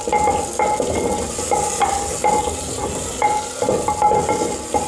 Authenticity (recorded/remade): recorded